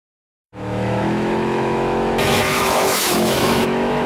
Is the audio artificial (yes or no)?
yes